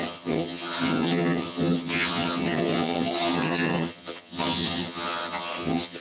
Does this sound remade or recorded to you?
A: remade